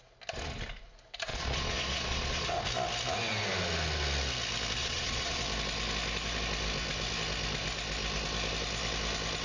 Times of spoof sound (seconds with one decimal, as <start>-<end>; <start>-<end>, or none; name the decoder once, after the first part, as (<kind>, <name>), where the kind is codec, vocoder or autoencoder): 1.3-2.6 (vocoder, Vocos); 4.8-5.4